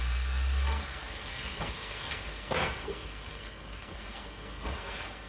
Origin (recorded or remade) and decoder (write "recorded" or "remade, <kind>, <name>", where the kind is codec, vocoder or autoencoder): remade, codec, SNAC